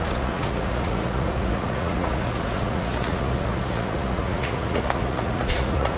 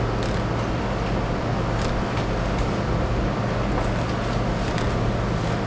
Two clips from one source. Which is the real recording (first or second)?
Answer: second